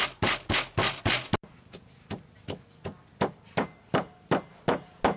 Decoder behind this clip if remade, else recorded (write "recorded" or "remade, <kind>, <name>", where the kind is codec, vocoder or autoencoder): recorded